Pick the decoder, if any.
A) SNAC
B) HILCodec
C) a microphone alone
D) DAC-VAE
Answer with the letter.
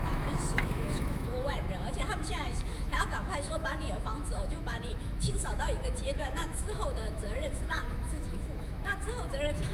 D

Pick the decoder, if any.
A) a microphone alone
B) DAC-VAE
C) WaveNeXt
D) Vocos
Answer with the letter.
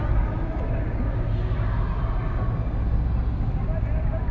A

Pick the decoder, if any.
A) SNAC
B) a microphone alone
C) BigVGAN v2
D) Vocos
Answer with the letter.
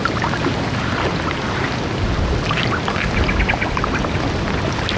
B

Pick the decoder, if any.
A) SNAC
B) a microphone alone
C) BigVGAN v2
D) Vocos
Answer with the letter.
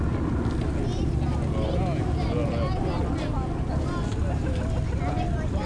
B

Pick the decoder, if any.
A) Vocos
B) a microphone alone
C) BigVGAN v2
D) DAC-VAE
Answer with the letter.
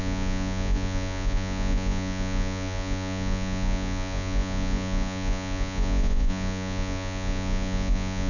A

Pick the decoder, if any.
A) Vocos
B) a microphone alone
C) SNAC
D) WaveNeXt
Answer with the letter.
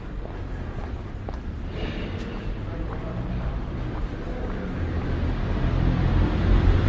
B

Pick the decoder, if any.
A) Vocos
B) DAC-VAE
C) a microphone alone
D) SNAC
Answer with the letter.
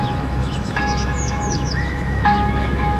B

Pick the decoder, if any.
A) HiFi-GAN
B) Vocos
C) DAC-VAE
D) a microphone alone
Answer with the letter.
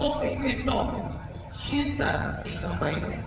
A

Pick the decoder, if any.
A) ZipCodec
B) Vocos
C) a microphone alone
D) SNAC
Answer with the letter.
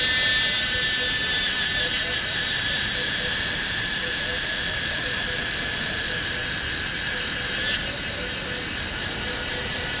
C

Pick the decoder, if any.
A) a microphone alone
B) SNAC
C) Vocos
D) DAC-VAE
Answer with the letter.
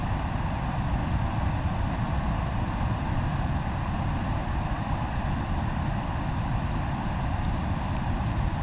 A